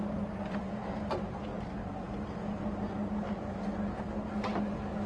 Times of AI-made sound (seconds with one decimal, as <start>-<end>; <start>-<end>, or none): none